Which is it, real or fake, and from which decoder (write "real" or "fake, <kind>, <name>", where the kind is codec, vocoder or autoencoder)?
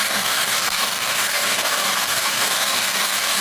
fake, codec, DAC